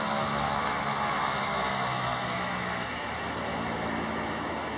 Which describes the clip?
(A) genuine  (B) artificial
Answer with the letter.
B